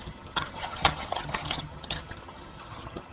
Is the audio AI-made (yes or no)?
yes